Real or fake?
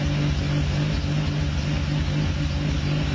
real